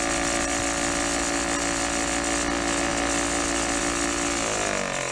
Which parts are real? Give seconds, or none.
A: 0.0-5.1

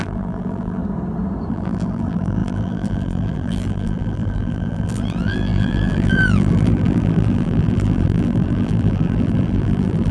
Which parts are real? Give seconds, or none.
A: 0.8-1.5

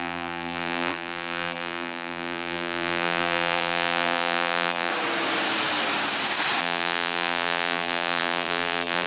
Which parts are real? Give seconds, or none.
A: 4.9-6.6

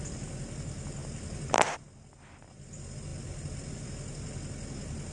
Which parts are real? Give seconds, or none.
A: 0.0-3.1; 3.8-5.1

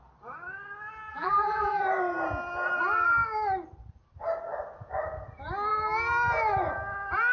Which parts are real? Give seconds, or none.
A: 0.0-1.1; 1.8-7.3

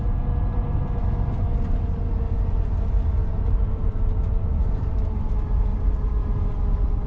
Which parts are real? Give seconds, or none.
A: 0.0-3.2; 4.9-5.7; 6.4-7.1